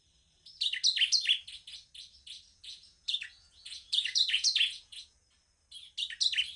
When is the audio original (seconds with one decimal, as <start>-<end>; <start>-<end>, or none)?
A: 0.0-2.5; 5.3-6.6

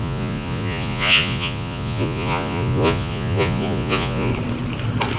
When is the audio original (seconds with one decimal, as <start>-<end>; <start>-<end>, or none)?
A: 4.3-5.2

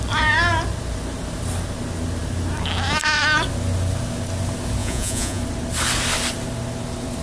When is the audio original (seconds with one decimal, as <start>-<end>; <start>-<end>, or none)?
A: 0.0-4.8; 5.4-7.2